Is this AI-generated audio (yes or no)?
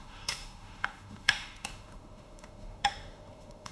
yes